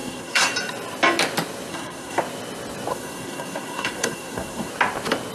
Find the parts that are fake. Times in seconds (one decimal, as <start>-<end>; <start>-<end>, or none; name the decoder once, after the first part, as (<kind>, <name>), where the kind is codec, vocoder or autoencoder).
0.0-0.5 (codec, SNAC); 1.7-2.2; 2.9-4.7